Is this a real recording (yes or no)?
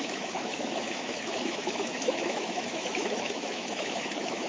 no